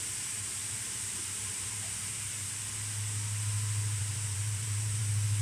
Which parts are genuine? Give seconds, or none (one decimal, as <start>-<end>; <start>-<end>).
0.0-0.6; 2.5-4.0; 5.0-5.4